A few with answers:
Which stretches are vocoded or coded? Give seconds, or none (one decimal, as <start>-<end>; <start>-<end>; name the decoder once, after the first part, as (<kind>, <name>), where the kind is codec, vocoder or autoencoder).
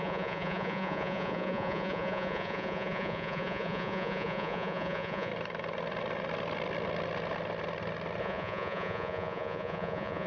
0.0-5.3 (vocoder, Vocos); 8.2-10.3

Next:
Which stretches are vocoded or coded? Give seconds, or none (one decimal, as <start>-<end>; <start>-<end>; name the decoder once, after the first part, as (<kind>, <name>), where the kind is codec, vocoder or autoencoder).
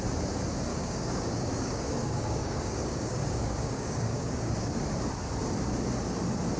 0.7-4.7 (codec, DAC)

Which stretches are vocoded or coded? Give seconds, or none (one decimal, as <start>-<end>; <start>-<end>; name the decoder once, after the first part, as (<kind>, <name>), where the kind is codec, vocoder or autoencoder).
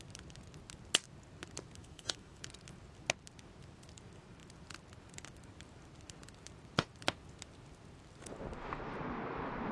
1.8-2.4 (autoencoder, DAC-VAE)